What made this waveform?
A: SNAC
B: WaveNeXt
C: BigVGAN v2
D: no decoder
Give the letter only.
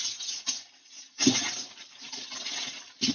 D